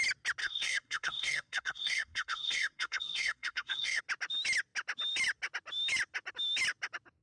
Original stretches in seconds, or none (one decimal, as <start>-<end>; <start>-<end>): 0.0-0.4; 4.0-7.2